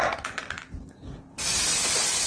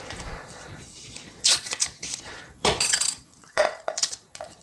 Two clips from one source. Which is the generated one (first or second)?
second